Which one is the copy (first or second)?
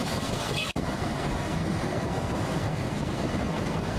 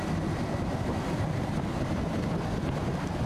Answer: first